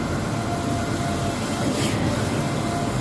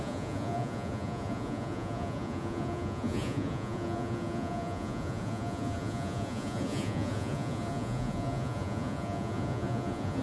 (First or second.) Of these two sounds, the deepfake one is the second